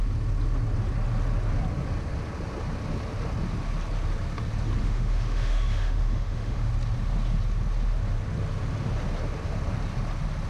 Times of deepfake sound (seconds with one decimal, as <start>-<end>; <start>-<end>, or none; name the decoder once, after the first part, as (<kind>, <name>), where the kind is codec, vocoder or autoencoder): 4.8-6.7 (autoencoder, DAC-VAE)